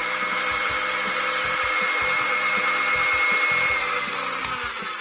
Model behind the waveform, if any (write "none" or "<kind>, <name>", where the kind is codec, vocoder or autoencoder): none